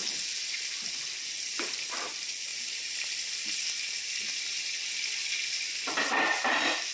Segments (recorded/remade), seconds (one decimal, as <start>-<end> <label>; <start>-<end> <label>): 0.0-6.9 recorded